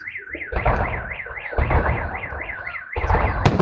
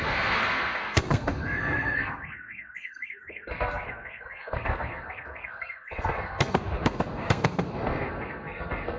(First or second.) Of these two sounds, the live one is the first